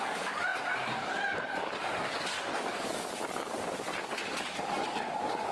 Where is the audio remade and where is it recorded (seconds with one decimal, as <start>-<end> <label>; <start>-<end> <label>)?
0.0-5.5 remade